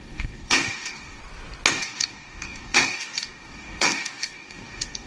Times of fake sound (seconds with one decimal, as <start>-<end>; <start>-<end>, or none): 0.0-1.2; 1.7-5.1